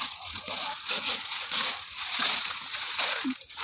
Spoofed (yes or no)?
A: yes